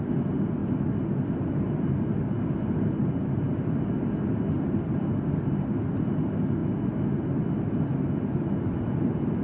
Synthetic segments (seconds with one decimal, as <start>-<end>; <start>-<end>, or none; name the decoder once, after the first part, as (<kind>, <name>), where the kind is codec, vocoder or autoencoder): none